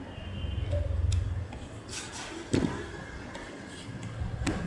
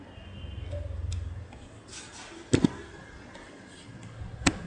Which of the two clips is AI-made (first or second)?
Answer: first